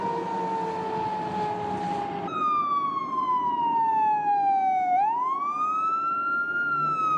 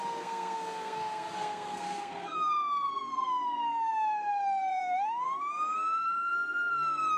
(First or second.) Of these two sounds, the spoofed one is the second